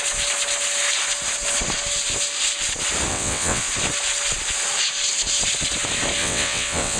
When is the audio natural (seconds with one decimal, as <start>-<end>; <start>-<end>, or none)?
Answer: 0.0-3.1; 3.7-6.2